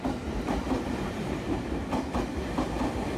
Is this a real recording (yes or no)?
yes